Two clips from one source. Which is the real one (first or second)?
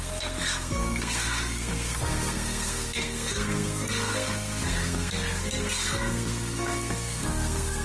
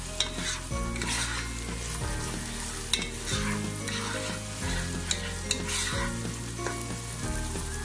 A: second